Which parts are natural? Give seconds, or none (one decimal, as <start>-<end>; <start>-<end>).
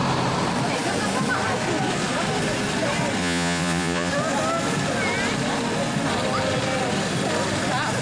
0.0-3.2; 4.1-8.0